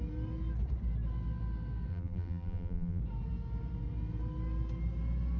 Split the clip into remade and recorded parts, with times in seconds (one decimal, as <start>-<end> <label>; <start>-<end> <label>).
0.0-1.9 recorded; 1.9-3.0 remade; 3.0-5.4 recorded